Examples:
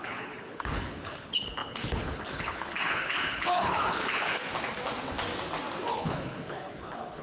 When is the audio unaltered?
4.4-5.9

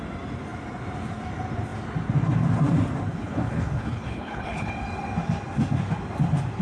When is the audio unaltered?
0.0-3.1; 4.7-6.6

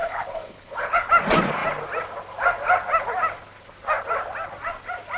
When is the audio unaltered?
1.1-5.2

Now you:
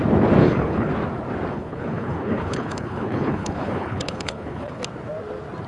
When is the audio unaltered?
0.0-0.4; 0.9-1.5; 4.8-5.7